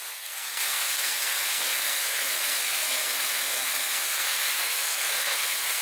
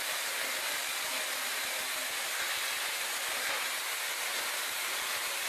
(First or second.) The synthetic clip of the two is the first